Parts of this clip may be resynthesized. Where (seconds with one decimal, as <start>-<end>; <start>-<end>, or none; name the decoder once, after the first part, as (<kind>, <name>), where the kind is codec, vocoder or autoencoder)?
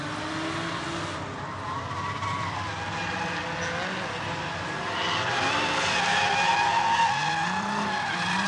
7.2-8.5 (vocoder, BigVGAN v2)